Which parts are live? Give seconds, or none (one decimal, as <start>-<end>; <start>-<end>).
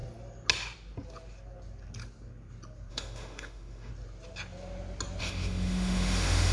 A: 0.0-2.9; 3.9-5.2